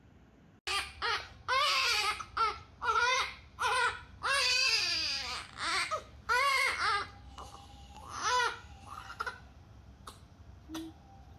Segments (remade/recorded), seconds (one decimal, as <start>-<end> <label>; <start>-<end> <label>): 0.0-11.4 recorded